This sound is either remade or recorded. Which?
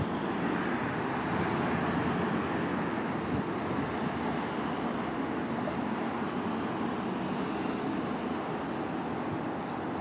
recorded